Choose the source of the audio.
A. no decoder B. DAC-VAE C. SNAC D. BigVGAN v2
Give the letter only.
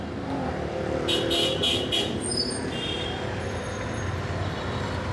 A